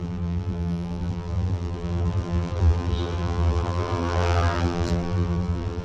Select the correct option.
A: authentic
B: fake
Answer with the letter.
B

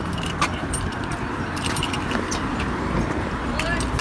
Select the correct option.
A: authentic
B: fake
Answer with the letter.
B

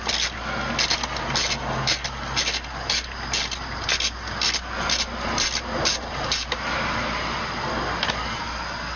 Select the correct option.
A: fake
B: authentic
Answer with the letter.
B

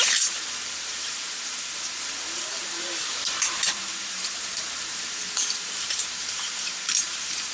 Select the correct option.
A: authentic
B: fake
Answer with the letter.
B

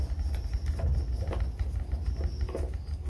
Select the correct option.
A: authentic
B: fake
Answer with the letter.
A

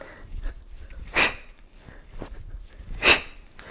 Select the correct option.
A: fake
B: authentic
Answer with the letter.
B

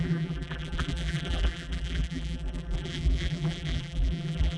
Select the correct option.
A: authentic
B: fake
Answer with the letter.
B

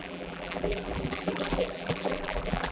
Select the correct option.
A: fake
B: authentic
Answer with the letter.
A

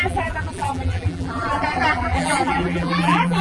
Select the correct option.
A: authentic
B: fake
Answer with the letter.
B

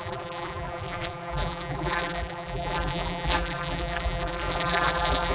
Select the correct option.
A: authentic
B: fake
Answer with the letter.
B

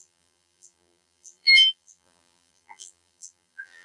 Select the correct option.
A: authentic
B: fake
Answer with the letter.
B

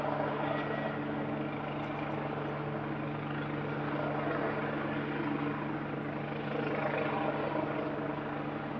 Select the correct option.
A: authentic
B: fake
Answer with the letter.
A